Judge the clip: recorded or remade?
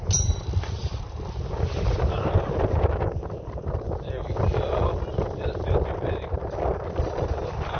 recorded